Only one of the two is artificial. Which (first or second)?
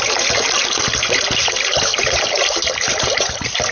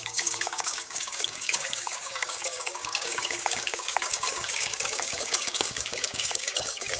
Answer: second